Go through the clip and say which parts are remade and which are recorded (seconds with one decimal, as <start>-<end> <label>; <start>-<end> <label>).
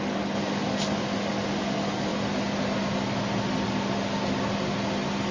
0.0-5.3 recorded